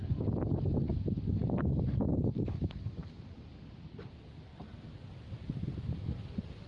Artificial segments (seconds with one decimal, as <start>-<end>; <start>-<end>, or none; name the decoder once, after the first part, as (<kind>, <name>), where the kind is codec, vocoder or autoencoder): 1.4-2.7 (codec, DAC)